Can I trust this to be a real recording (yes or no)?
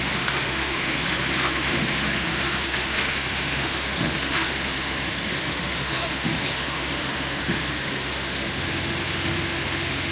no